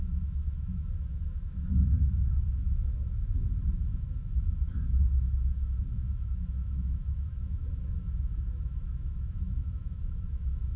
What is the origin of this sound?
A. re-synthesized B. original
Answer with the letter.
A